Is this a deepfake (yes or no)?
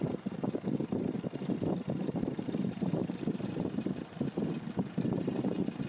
yes